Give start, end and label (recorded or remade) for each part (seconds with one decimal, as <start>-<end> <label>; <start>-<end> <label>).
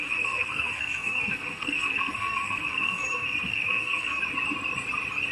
0.0-4.2 remade; 4.2-5.3 recorded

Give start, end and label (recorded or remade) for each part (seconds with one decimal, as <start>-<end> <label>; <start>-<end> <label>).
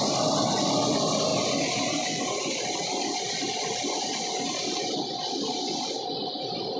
0.0-6.8 recorded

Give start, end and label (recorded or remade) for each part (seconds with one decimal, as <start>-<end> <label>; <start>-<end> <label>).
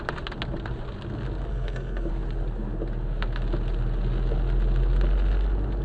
0.0-1.5 recorded; 1.5-2.1 remade; 2.1-5.8 recorded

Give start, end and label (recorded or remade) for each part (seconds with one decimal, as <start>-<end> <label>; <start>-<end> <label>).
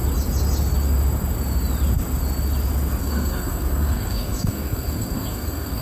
0.0-3.0 recorded; 3.0-5.8 remade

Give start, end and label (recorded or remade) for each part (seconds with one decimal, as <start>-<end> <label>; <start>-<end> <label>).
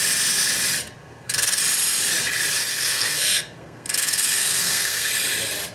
0.0-1.0 recorded; 1.0-1.6 remade; 1.6-2.7 recorded; 2.7-5.1 remade; 5.1-5.7 recorded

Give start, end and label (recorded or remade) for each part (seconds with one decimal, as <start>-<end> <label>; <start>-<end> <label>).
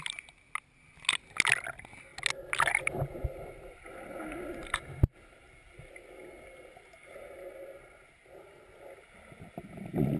0.0-10.2 recorded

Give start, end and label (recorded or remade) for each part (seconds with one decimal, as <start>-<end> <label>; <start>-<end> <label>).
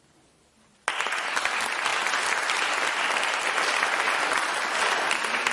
0.0-5.5 recorded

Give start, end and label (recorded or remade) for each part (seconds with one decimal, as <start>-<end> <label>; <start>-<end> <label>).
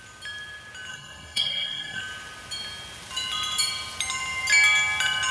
0.0-0.9 recorded; 0.9-2.0 remade; 2.0-5.3 recorded